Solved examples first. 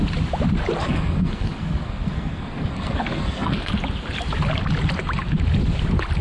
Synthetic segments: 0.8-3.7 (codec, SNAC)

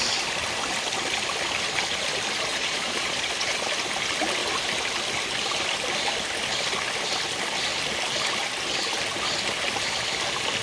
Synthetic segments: 2.5-3.6 (vocoder, Vocos)